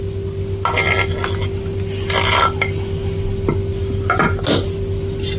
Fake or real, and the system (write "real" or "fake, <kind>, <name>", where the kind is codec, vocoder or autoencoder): real